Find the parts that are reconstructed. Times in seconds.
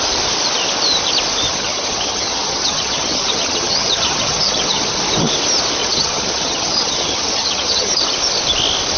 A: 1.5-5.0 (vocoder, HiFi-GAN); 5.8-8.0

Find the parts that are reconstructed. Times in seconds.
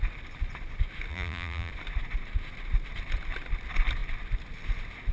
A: 1.1-1.7 (vocoder, BigVGAN v2)